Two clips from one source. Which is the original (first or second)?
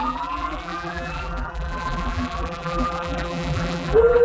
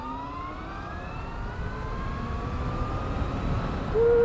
second